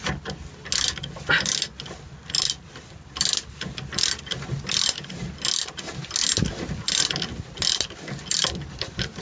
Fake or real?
real